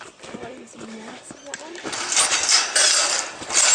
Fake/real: real